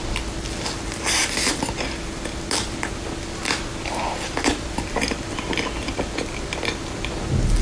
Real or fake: real